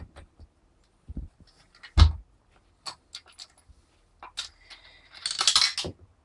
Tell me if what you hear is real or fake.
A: real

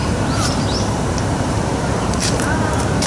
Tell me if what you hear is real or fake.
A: fake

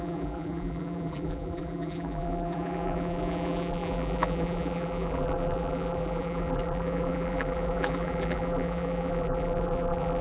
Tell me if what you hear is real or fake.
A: fake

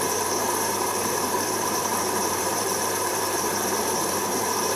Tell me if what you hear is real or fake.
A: fake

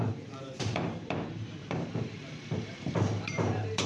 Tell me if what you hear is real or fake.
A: fake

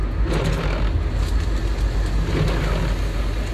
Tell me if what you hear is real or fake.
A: real